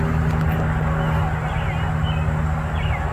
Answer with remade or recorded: recorded